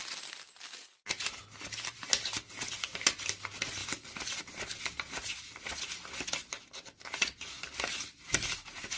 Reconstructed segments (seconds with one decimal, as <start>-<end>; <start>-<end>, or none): none